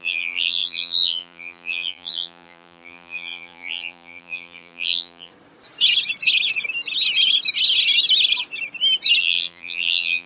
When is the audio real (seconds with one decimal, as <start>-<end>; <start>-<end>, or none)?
5.3-9.2